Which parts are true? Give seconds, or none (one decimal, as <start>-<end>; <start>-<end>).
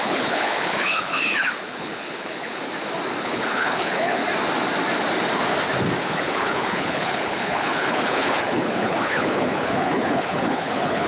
2.6-3.2; 4.2-6.0